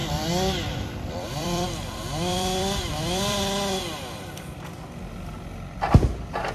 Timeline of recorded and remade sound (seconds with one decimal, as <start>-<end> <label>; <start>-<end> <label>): 0.0-3.4 remade; 3.4-6.5 recorded